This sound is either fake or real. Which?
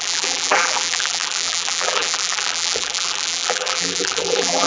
fake